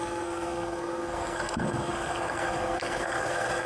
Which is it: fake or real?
fake